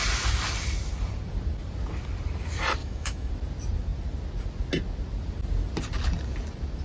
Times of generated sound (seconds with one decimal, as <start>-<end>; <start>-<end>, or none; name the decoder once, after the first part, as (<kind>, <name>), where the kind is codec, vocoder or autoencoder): 2.8-3.3 (autoencoder, DAC-VAE)